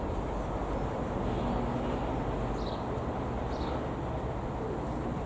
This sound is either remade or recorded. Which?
recorded